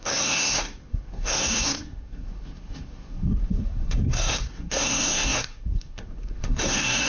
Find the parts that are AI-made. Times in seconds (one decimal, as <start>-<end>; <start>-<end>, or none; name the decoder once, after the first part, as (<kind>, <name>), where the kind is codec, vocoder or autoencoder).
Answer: 0.0-7.1 (codec, SNAC)